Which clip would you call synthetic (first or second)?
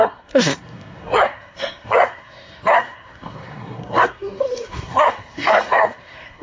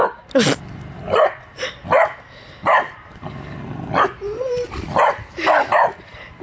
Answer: first